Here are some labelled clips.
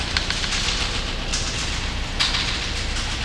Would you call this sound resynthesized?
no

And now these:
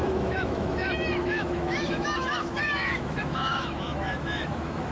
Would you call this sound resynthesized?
yes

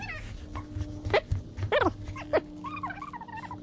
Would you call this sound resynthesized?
no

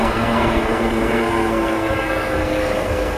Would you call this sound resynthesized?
yes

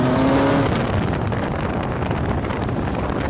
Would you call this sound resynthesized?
no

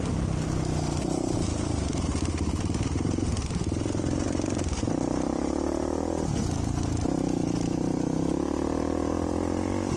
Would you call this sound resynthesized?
no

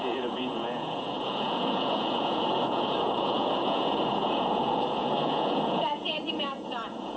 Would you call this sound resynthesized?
yes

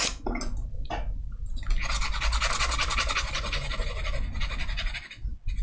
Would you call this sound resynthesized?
no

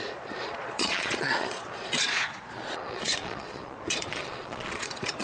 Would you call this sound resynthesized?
yes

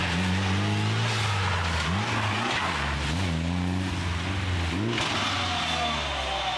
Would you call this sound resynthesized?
no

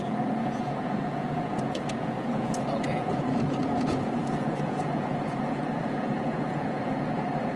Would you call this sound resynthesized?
yes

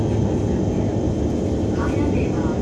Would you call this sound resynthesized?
no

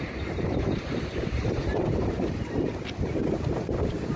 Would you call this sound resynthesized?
yes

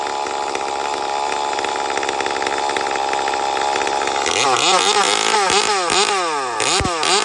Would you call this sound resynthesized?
no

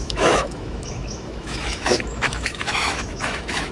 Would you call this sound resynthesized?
yes